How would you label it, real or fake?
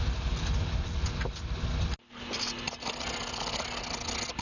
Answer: real